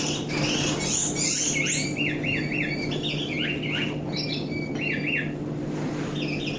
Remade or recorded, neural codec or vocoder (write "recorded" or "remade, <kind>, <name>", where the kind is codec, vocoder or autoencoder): recorded